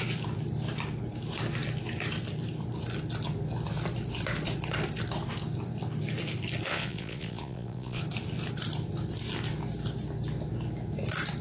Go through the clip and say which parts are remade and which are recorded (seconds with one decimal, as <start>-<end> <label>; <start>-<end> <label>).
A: 0.0-6.7 recorded; 6.7-8.0 remade; 8.0-11.4 recorded

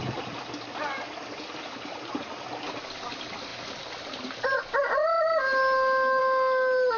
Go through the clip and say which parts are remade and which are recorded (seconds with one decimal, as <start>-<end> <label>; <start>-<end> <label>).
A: 0.0-7.0 recorded

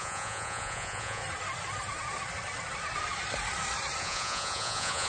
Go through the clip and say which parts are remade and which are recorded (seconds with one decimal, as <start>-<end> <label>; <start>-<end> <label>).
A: 0.0-1.2 remade; 1.2-4.0 recorded; 4.0-5.1 remade

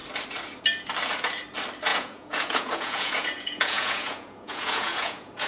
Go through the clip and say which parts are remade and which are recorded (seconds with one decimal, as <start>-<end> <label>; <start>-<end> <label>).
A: 0.0-1.9 recorded; 1.9-5.5 remade